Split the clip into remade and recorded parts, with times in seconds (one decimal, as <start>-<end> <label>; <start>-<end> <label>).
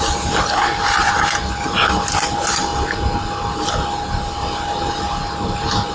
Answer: 0.0-5.9 recorded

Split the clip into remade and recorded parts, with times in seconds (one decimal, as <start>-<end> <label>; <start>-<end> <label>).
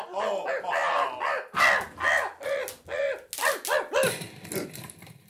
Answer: 0.0-5.3 recorded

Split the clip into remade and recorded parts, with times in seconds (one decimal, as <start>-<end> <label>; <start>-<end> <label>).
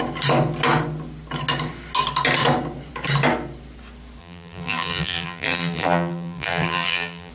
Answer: 0.0-4.2 recorded; 4.2-7.3 remade